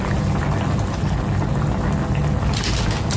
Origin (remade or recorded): recorded